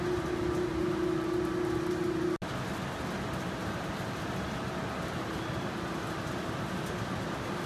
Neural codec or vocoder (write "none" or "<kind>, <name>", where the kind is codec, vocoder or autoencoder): none